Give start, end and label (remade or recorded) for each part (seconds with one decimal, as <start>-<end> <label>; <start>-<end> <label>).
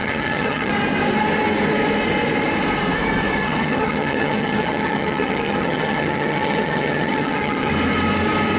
0.0-0.7 remade; 0.7-3.4 recorded; 3.4-7.7 remade; 7.7-8.6 recorded